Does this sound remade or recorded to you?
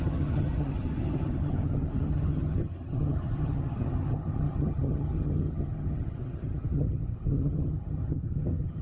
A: remade